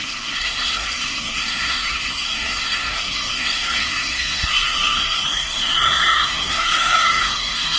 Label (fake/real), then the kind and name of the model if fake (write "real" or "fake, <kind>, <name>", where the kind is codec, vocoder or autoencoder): fake, codec, SNAC